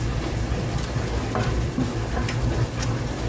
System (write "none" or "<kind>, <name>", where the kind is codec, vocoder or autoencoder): none